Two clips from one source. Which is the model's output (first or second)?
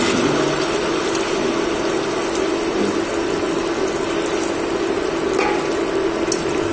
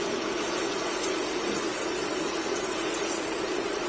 second